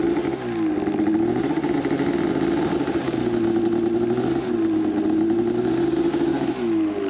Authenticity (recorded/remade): recorded